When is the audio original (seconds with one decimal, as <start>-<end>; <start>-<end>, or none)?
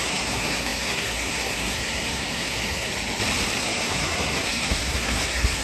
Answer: 2.9-3.6